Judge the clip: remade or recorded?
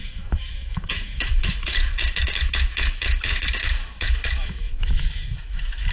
remade